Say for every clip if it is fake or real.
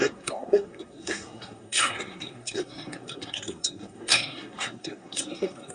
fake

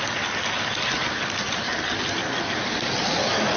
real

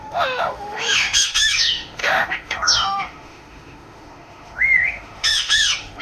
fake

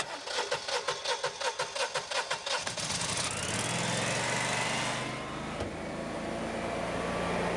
real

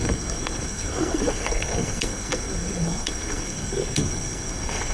fake